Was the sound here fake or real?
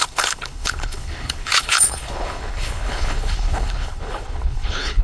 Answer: fake